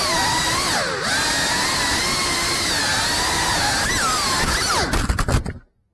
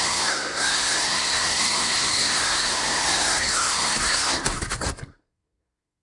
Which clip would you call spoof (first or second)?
second